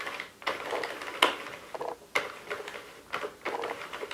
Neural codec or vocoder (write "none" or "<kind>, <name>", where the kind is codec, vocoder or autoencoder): none